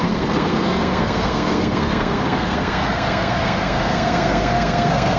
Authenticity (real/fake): fake